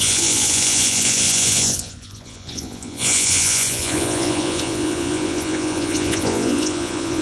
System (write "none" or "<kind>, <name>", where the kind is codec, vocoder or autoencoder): vocoder, Vocos